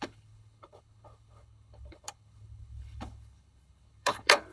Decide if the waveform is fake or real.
fake